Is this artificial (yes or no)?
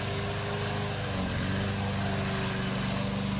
no